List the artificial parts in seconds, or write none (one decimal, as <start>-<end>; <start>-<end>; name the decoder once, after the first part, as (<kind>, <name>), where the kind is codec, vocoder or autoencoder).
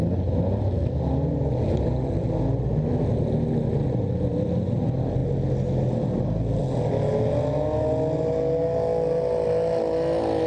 none